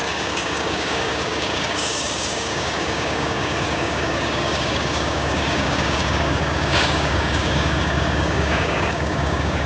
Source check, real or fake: fake